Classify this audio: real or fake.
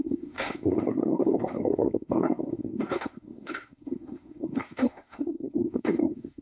fake